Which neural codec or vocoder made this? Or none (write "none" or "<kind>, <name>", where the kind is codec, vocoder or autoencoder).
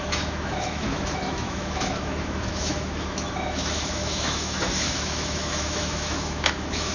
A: autoencoder, DAC-VAE